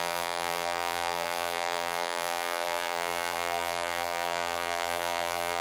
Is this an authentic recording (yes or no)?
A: no